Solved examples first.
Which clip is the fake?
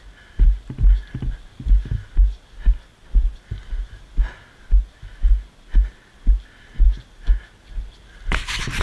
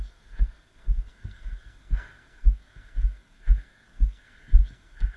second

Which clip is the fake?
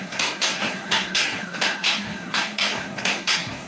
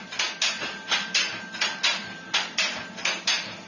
first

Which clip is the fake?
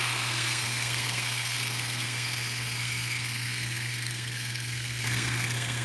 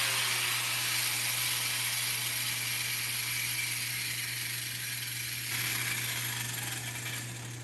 first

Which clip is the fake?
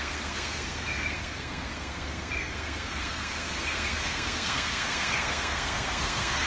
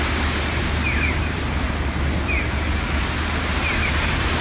first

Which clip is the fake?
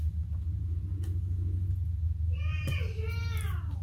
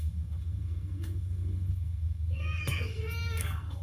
second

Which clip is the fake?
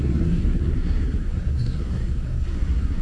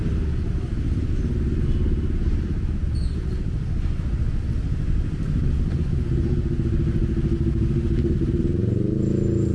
first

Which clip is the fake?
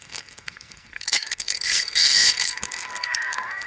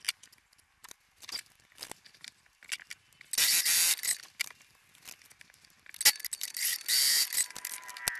first